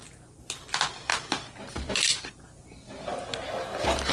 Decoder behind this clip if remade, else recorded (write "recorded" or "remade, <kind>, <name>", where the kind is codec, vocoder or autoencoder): recorded